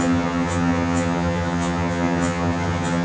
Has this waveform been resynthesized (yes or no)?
yes